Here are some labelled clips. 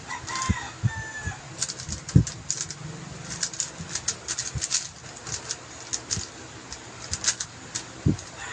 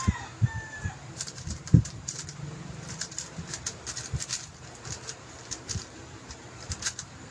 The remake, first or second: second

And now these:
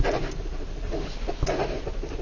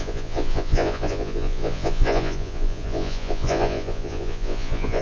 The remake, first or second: second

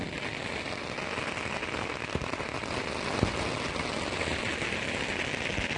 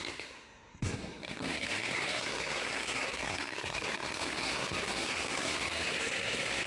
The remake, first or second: second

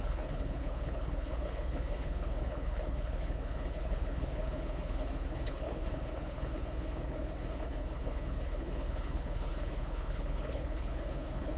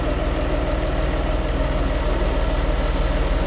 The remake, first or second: first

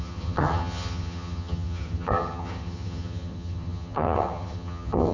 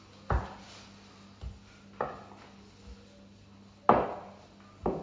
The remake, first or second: first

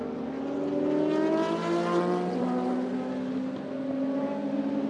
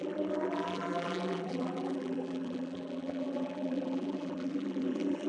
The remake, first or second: second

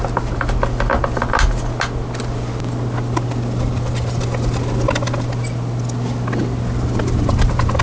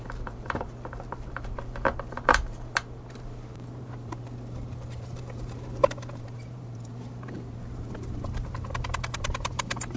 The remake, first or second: second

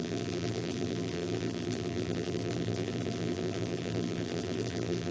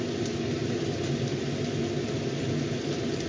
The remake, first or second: first